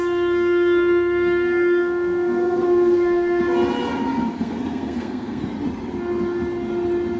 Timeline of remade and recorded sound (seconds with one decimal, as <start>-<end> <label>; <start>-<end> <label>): 0.0-3.4 remade; 3.4-4.3 recorded; 4.3-5.5 remade; 5.5-7.2 recorded